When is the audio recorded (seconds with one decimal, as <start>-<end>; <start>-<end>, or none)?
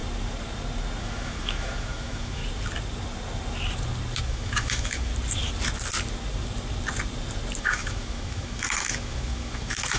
0.0-1.0; 2.4-4.2; 5.1-7.6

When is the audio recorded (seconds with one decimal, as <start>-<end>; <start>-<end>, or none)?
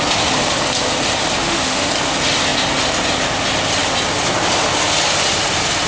0.0-1.4; 1.9-5.9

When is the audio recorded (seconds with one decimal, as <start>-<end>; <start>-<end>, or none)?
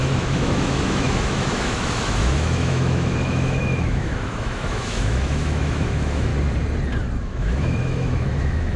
6.3-7.2